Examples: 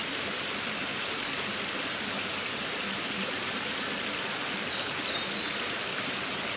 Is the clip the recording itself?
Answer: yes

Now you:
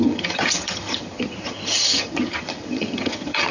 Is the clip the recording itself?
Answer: no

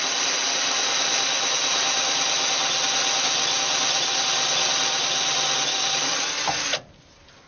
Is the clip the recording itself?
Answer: yes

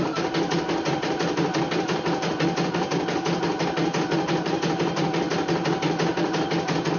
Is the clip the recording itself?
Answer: yes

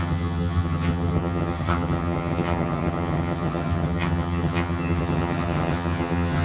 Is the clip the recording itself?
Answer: no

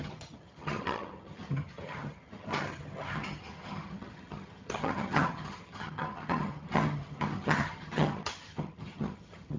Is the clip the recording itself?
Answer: no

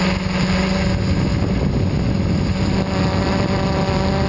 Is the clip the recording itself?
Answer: yes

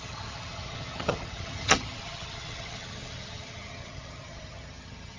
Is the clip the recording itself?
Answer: no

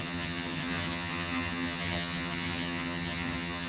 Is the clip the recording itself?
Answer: no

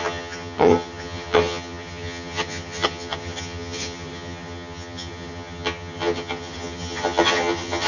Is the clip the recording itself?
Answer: no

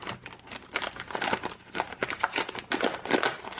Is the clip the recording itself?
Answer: yes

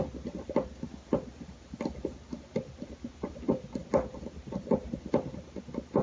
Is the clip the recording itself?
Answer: yes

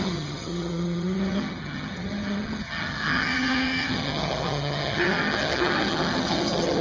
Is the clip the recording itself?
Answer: no